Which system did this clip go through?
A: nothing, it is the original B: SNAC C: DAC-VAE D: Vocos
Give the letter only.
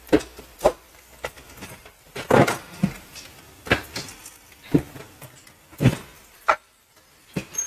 A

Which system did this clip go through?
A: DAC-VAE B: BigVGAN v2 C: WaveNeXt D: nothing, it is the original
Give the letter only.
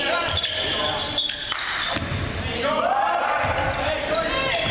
D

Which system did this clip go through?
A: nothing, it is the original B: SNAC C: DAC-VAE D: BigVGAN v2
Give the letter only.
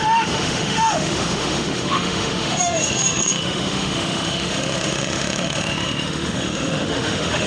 C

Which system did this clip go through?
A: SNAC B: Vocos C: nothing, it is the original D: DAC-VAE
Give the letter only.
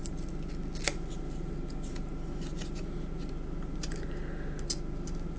C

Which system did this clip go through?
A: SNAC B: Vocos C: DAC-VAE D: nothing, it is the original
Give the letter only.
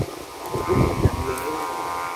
D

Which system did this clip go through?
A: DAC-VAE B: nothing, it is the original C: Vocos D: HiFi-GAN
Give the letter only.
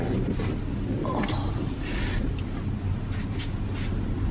B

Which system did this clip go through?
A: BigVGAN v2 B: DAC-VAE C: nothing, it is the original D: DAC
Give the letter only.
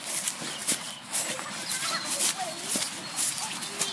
C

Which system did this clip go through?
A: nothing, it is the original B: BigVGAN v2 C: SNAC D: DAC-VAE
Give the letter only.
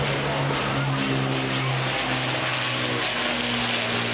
A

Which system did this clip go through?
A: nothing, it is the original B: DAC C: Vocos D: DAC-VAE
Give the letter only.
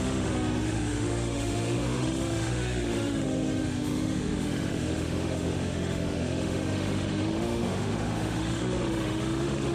D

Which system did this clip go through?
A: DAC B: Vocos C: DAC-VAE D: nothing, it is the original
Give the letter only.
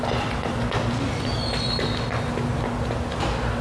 D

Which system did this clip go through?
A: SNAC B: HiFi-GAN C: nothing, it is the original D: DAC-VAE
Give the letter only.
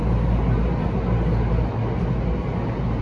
C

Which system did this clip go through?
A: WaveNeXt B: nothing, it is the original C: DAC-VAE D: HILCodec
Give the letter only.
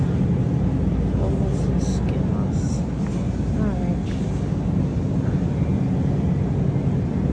B